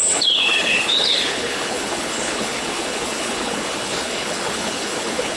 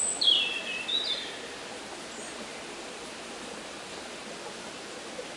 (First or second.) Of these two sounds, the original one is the second